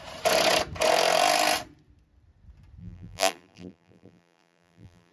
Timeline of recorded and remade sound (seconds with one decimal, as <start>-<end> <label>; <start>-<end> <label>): 0.0-2.8 recorded; 2.8-5.1 remade